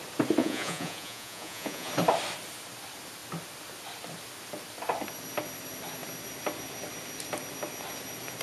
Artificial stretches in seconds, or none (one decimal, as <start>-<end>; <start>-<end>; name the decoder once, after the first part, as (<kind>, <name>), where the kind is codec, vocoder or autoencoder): 0.4-1.9 (vocoder, Vocos)